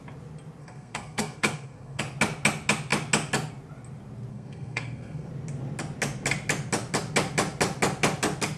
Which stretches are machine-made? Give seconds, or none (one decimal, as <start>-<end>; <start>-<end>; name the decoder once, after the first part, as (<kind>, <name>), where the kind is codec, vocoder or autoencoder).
0.6-2.0 (codec, SNAC); 4.3-5.3